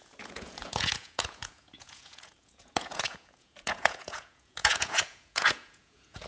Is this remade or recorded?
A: remade